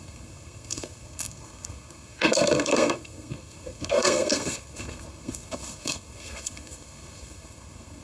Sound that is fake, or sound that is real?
fake